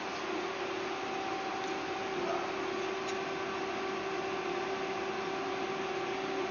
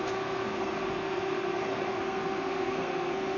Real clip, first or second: first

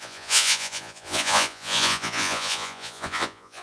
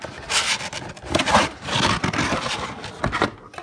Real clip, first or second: second